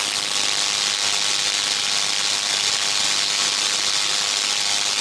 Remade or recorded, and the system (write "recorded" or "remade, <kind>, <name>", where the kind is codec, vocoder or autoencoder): recorded